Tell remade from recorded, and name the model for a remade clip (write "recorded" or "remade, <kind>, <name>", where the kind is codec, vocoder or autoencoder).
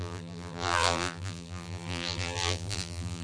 remade, vocoder, BigVGAN v2